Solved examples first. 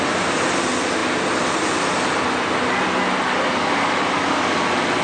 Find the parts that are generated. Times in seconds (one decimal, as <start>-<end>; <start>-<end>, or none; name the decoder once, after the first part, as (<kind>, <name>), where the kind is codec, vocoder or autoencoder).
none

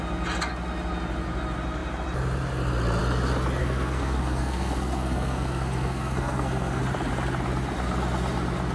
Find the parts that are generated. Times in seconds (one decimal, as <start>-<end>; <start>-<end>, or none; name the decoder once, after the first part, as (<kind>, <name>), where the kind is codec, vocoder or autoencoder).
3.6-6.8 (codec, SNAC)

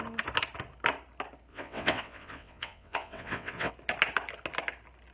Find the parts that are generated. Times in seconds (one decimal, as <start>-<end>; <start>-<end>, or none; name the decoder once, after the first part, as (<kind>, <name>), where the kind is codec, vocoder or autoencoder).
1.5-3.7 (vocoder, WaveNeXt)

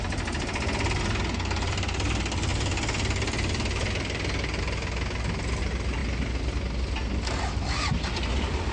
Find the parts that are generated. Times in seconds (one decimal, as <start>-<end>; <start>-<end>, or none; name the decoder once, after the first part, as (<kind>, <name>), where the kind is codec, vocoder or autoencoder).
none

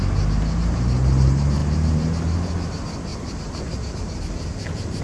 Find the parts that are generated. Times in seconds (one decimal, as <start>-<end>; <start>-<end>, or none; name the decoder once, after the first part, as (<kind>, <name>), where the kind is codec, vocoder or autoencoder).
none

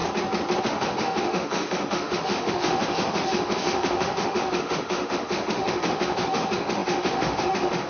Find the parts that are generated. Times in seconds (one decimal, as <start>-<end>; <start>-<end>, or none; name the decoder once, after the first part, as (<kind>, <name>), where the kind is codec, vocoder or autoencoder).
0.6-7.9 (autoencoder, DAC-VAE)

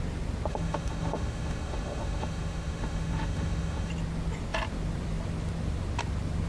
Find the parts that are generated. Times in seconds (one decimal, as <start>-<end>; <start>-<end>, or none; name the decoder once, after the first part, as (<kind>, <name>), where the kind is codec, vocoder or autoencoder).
0.5-3.9 (autoencoder, DAC-VAE)

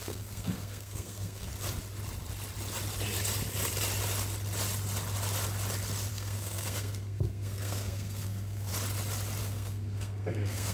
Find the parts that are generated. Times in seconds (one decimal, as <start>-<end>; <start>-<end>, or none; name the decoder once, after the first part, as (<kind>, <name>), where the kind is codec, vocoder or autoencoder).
0.0-1.5 (codec, SNAC); 6.1-8.7; 9.4-10.7